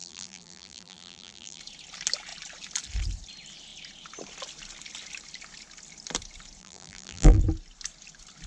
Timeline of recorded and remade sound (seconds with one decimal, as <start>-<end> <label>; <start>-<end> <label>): 0.0-1.6 remade; 1.6-6.6 recorded; 6.6-7.4 remade; 7.4-8.5 recorded